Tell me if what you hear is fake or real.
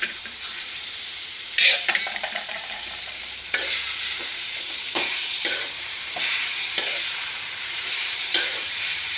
fake